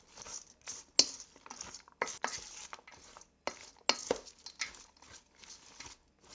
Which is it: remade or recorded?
recorded